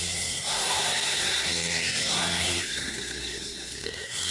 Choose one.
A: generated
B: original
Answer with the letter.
A